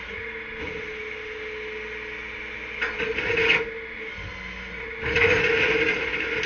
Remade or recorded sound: recorded